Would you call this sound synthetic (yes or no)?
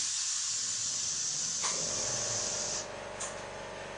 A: no